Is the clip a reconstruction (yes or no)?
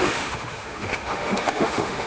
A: yes